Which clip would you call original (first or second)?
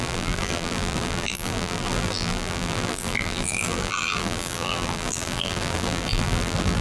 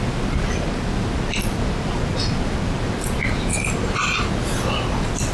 second